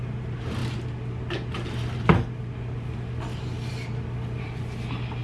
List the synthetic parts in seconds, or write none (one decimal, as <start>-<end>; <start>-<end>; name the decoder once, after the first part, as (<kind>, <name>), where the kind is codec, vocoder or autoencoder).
none